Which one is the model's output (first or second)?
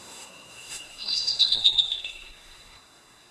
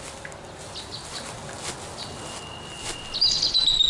first